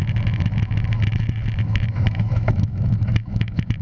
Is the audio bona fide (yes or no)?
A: no